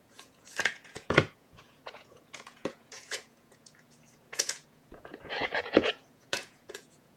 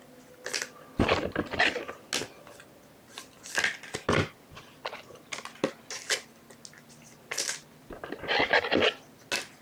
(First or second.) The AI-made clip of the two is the first